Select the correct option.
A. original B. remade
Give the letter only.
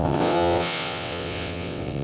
B